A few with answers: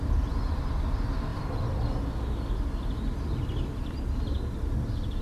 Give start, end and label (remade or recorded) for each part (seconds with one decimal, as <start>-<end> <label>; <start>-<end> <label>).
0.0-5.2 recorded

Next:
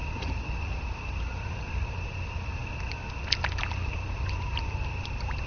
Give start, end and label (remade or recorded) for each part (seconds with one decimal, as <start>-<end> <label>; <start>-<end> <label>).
0.0-2.6 remade; 2.6-3.6 recorded; 3.6-5.5 remade

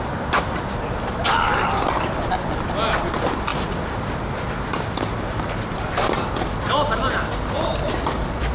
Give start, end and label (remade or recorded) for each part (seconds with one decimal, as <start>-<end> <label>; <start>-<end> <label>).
0.0-3.5 remade; 3.5-7.9 recorded; 7.9-8.5 remade